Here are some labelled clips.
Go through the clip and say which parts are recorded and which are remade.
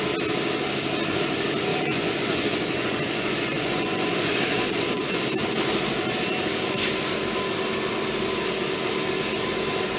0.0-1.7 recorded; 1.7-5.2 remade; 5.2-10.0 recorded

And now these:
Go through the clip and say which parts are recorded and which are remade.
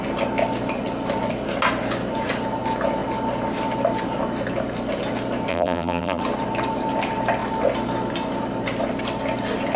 0.0-5.5 recorded; 5.5-6.2 remade; 6.2-9.8 recorded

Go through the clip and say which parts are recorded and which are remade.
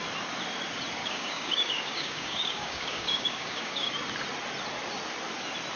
0.0-1.0 recorded; 1.0-3.9 remade; 3.9-5.8 recorded